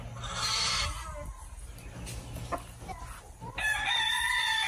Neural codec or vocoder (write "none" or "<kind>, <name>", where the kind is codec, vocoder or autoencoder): none